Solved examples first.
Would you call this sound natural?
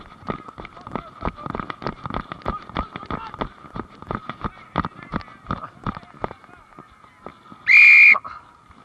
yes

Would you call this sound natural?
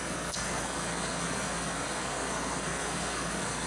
no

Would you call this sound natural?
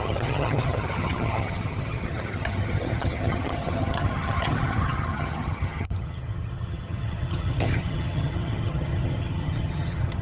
no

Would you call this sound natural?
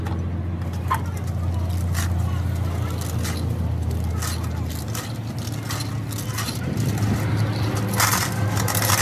yes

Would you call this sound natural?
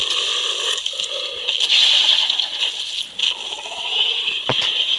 yes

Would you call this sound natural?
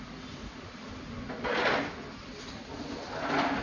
yes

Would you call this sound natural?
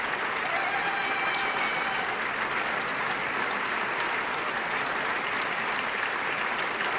yes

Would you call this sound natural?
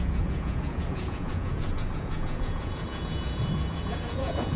no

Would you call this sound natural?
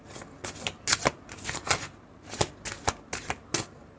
yes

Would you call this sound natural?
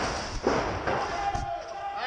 yes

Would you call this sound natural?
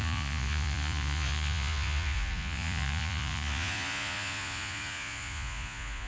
no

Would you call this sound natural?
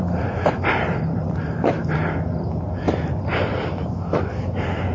no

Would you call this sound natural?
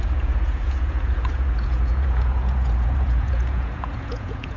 no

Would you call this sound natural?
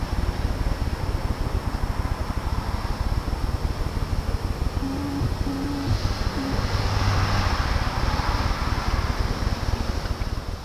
yes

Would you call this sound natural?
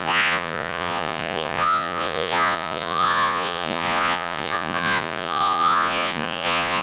no